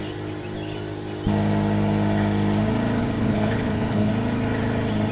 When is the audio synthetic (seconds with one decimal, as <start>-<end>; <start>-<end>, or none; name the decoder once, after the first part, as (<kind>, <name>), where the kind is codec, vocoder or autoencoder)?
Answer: 3.0-4.1 (codec, HILCodec)